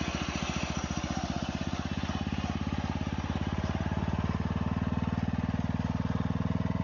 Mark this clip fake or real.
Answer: real